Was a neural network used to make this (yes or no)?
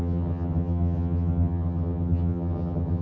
yes